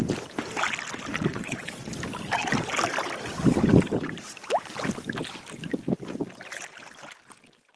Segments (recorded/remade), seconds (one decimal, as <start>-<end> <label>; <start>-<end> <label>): 0.0-1.1 recorded; 1.1-1.9 remade; 1.9-7.8 recorded